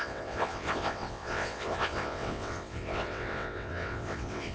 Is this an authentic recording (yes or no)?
no